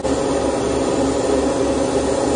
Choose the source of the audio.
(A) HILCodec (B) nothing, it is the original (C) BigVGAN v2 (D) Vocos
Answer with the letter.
B